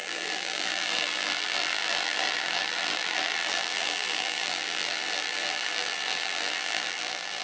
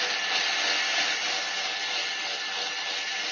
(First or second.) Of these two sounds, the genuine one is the second